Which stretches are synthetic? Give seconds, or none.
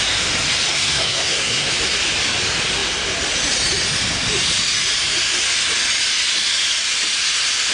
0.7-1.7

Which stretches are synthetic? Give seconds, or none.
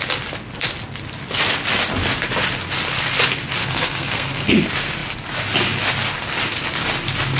3.6-4.5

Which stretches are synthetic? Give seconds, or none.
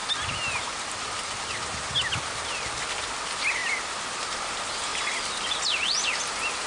none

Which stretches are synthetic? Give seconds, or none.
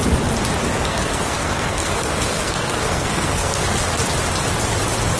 0.7-3.8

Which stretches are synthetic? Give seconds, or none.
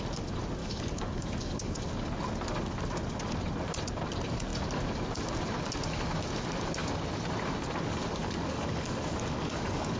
0.6-1.8; 8.2-10.0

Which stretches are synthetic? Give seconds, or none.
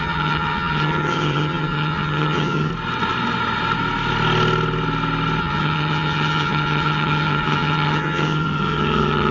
0.0-2.7; 5.4-9.3